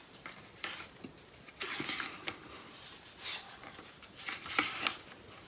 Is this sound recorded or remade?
recorded